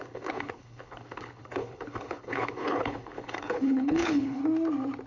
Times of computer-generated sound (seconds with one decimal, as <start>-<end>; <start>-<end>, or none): 0.0-4.4